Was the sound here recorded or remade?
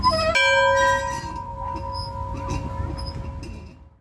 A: recorded